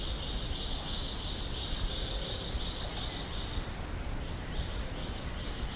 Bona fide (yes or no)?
yes